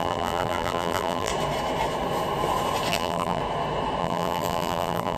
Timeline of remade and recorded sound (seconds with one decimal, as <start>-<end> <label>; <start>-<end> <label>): 0.0-1.3 remade; 1.3-2.9 recorded; 2.9-3.4 remade; 3.4-4.0 recorded; 4.0-5.2 remade